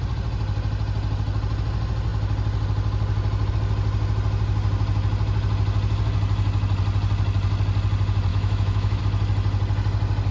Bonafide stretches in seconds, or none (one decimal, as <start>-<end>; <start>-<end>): 0.0-8.3; 9.0-10.3